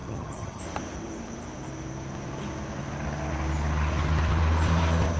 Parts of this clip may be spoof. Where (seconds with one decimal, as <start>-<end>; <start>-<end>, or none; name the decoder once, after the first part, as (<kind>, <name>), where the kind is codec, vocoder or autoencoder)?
0.0-0.6 (vocoder, HiFi-GAN)